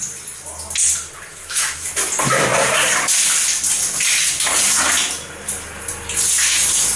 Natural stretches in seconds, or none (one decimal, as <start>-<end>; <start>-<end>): 0.0-1.3; 1.9-7.0